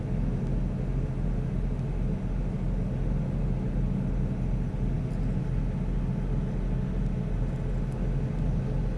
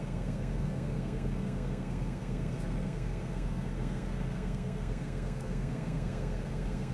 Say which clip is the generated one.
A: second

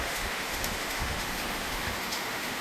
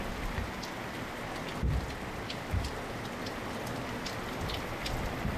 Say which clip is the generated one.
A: first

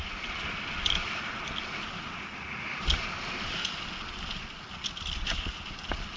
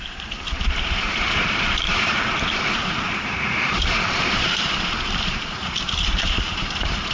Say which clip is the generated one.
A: second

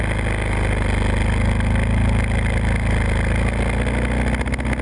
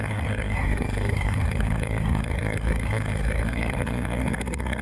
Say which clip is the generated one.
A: second